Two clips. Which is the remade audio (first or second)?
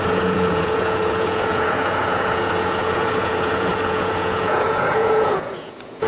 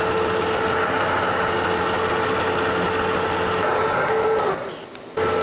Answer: first